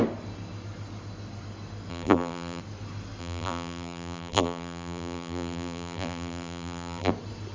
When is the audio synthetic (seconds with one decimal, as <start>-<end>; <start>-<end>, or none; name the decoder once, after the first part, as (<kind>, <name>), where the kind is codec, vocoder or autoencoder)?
1.9-2.6 (vocoder, BigVGAN v2); 3.2-7.1